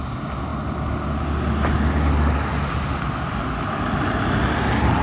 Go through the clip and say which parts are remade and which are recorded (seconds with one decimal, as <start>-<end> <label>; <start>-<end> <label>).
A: 0.0-5.0 recorded

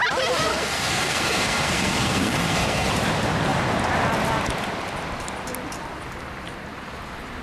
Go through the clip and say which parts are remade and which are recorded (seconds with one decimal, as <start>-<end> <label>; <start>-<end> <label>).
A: 0.0-0.5 recorded; 0.5-2.9 remade; 2.9-7.4 recorded